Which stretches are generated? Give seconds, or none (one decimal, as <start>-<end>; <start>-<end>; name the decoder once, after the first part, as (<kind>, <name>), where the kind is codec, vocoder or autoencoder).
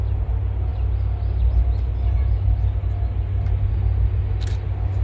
none